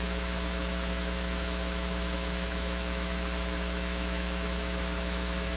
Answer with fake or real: fake